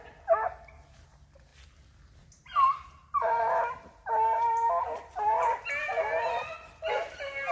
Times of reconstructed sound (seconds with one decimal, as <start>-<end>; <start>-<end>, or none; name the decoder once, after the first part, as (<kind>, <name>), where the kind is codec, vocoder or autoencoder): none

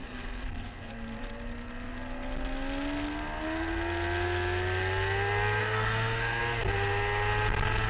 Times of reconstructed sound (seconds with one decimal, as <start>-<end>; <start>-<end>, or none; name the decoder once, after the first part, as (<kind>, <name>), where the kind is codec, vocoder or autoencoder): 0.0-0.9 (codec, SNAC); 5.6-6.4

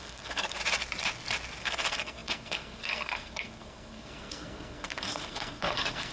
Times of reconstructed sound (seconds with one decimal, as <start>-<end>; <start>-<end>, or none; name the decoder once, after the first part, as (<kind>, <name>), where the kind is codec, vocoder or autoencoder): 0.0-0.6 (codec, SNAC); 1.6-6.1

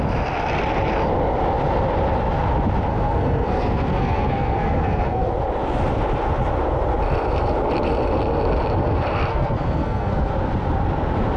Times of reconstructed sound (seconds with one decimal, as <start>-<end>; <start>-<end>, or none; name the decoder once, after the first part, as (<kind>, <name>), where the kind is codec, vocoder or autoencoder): 2.9-5.3 (codec, SNAC); 9.3-10.3